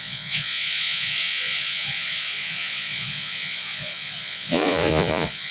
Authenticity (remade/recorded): remade